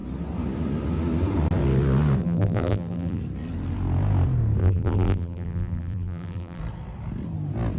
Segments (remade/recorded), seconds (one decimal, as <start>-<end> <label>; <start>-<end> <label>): 0.0-2.2 recorded; 2.2-3.2 remade; 3.2-4.6 recorded; 4.6-6.6 remade; 6.6-7.8 recorded